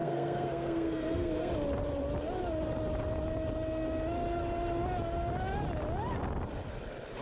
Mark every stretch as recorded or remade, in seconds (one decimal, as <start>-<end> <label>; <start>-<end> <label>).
0.0-1.5 remade; 1.5-7.2 recorded